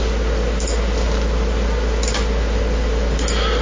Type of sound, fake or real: real